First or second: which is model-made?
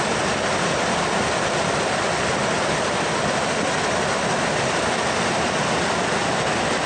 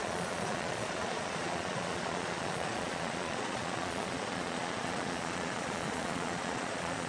second